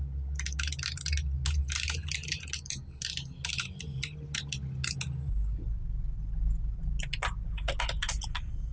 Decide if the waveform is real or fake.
real